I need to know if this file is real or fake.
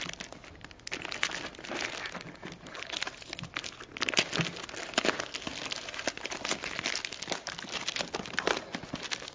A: real